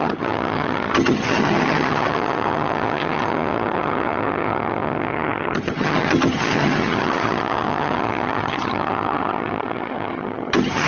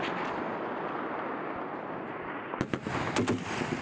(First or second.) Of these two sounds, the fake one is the first